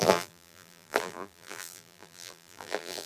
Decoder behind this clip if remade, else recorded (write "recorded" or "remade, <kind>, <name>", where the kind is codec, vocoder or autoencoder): remade, vocoder, BigVGAN v2